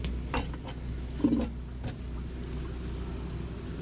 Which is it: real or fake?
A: real